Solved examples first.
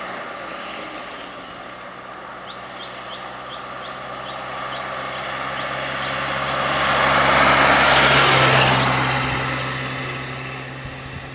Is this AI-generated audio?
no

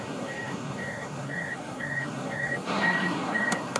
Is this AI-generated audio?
yes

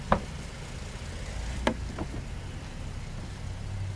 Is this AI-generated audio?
no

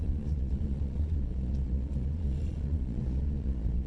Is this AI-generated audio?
yes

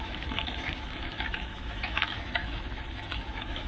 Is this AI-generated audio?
yes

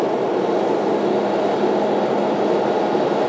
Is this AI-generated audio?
no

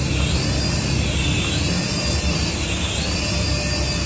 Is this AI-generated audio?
no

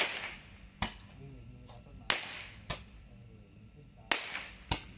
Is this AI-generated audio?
no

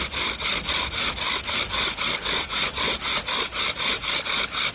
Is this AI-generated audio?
no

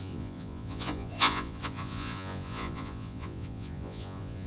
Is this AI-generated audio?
yes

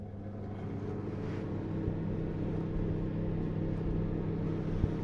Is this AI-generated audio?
no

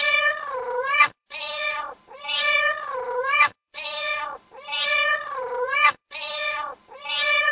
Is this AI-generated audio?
yes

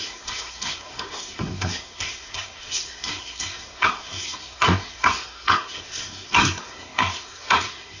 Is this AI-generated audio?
yes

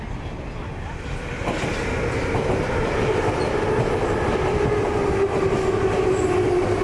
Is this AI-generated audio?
no